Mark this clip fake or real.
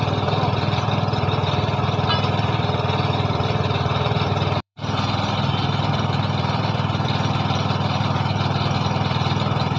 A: fake